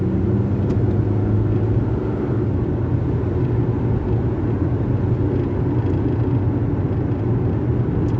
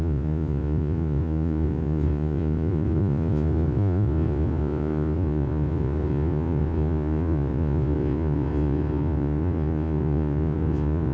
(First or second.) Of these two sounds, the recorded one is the first